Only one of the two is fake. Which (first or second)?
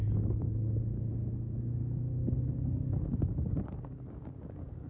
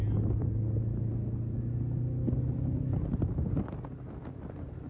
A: first